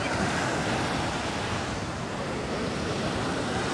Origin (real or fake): real